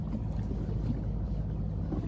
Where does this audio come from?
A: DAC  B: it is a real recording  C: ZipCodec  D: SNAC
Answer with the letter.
B